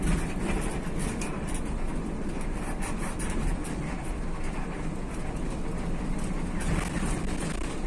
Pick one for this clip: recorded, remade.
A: recorded